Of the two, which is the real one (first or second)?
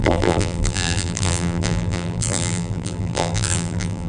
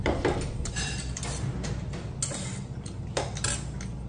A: second